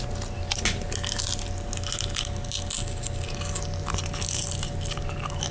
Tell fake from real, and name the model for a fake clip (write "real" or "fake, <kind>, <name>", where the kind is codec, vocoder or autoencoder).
real